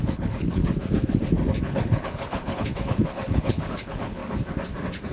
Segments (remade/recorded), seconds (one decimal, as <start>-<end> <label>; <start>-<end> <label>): 0.0-0.6 remade; 0.6-1.6 recorded; 1.6-4.2 remade; 4.2-5.1 recorded